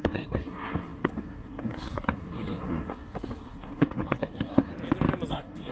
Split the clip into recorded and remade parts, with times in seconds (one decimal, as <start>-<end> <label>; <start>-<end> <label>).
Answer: 0.0-4.7 remade; 4.7-5.3 recorded; 5.3-5.7 remade